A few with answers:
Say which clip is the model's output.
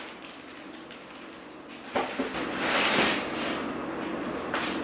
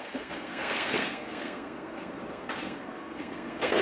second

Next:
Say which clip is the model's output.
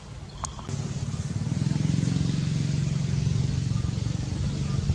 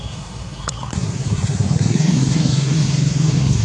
second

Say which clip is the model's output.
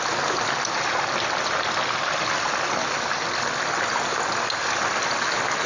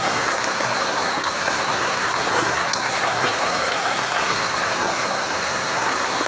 second